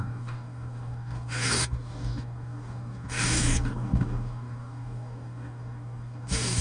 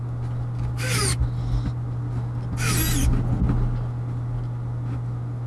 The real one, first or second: second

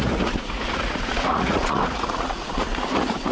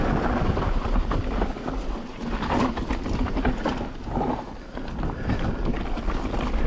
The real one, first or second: second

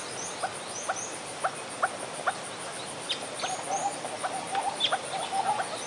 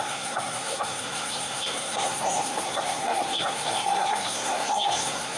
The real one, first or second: first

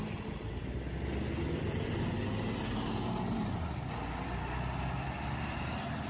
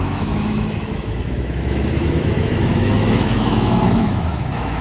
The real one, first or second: first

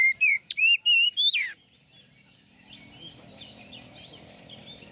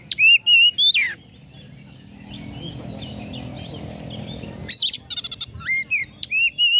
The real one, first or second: second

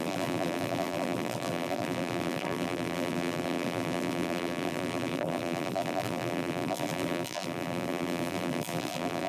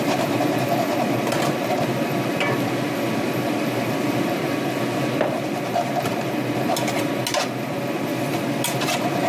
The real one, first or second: second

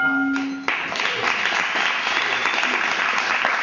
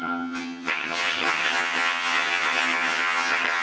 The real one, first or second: first